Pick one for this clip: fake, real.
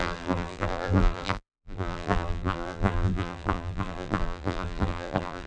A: fake